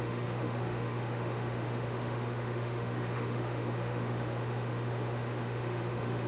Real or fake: fake